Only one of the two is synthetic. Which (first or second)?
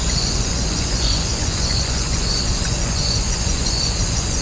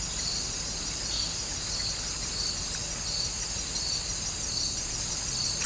first